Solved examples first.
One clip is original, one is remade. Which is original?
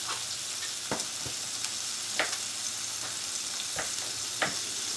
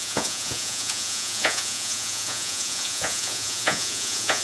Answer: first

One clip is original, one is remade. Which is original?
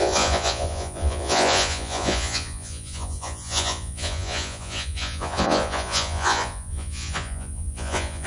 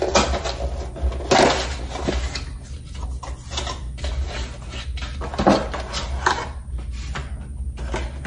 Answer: second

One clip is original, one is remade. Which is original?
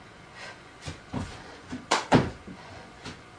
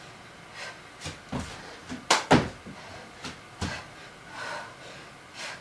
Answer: second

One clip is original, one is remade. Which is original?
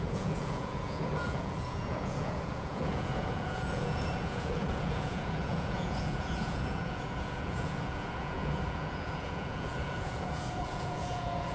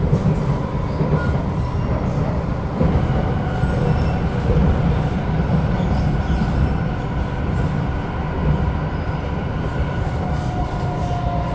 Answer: second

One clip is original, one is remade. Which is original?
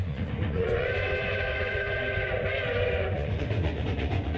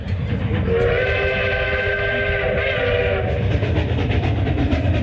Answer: second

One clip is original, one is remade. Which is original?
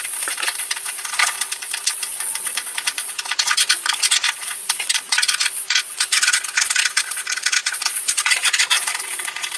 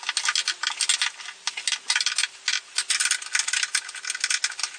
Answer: second